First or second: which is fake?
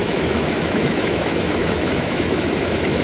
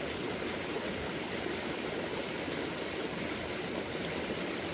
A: first